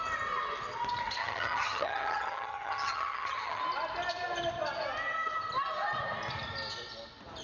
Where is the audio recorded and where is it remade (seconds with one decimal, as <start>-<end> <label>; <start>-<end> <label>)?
0.0-1.2 recorded; 1.2-3.6 remade; 3.6-7.4 recorded